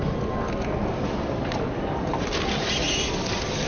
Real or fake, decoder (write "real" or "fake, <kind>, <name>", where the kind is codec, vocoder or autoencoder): real